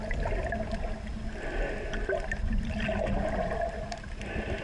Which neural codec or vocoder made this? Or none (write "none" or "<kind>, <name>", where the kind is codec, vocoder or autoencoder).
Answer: none